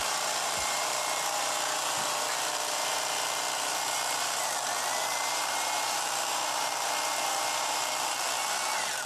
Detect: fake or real fake